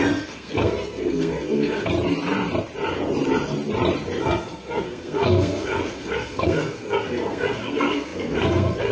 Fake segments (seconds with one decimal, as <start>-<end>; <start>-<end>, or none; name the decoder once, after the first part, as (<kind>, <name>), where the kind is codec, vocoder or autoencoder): 0.0-1.9 (codec, SNAC); 4.2-8.9